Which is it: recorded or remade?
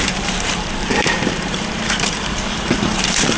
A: remade